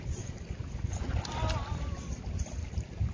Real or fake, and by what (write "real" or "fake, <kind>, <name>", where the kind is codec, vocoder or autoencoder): real